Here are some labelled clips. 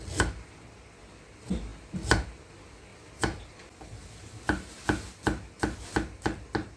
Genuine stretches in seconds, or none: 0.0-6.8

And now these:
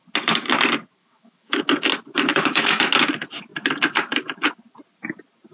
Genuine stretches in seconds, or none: 0.0-1.0; 1.6-2.3; 2.8-5.5